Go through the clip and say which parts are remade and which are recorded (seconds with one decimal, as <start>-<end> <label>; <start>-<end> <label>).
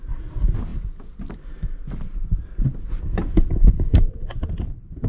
0.0-5.1 recorded